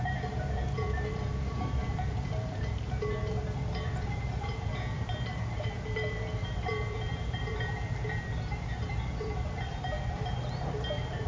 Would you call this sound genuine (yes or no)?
no